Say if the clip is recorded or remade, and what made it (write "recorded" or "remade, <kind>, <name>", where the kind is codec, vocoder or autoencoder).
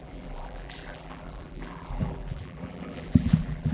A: remade, vocoder, BigVGAN v2